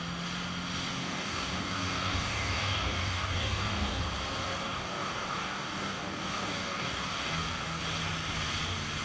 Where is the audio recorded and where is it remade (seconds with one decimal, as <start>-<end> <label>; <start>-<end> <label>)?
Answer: 0.0-0.9 recorded; 0.9-4.0 remade; 4.0-4.6 recorded; 4.6-7.8 remade; 7.8-9.0 recorded